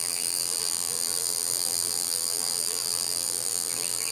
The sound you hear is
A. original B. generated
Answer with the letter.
B